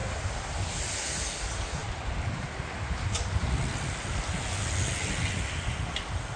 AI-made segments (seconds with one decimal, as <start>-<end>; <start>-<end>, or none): 1.8-3.3

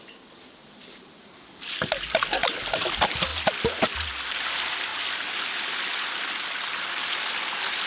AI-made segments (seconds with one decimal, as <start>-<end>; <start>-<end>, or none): none

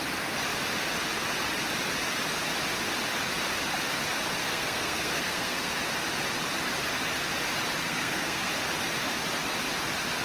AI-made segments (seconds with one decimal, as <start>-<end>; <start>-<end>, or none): 4.4-5.7; 7.8-8.5